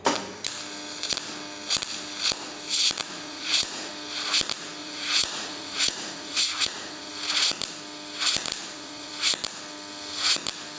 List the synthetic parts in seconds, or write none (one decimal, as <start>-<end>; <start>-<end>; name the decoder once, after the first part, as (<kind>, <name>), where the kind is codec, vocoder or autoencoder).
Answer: 3.0-3.9 (vocoder, Vocos); 4.8-7.1; 8.6-9.1